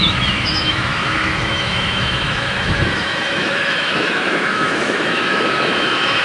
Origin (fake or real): fake